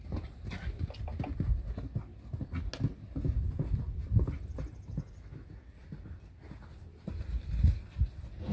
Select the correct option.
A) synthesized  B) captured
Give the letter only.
B